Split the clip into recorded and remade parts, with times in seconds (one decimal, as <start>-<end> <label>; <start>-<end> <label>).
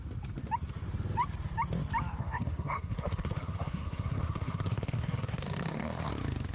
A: 0.0-2.2 recorded; 2.2-6.1 remade; 6.1-6.5 recorded